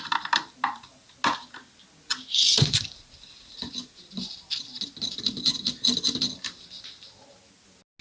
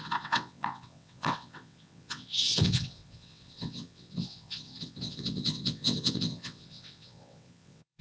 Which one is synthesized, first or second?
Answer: second